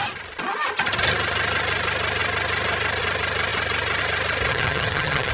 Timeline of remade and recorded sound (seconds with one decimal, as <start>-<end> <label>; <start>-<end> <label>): 0.0-4.5 recorded; 4.5-5.3 remade